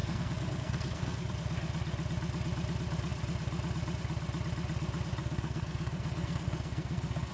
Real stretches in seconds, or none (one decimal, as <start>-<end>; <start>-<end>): 1.3-5.2